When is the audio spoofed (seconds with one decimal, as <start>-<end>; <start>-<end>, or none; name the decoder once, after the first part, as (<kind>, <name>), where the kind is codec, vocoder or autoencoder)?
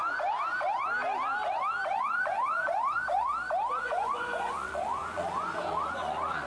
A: 1.9-3.3 (vocoder, Vocos); 3.8-6.5